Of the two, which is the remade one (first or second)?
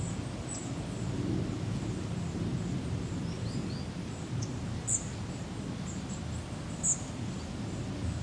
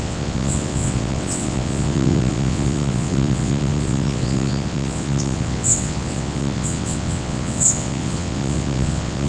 second